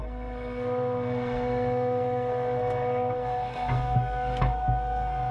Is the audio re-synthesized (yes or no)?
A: yes